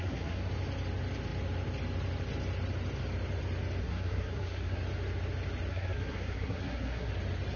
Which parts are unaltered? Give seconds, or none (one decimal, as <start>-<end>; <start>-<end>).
0.5-3.8; 4.8-5.7; 7.1-7.6